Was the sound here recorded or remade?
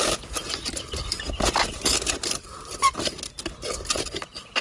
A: recorded